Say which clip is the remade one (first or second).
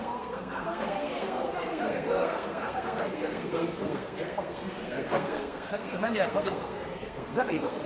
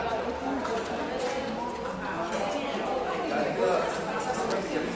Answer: first